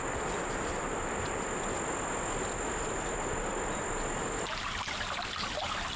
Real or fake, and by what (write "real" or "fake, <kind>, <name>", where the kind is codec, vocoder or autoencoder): real